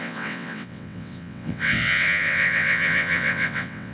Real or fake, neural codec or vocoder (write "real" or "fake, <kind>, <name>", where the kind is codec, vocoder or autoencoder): fake, vocoder, WaveNeXt